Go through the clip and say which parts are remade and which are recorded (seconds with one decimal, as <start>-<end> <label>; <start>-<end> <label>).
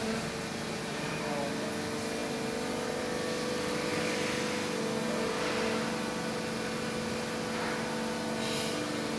0.0-9.2 recorded